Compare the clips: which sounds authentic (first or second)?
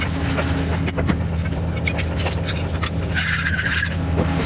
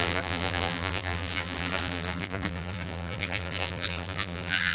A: first